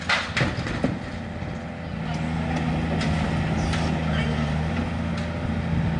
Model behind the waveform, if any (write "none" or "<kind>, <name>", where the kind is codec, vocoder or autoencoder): none